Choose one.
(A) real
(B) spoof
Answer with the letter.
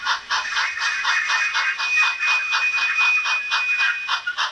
A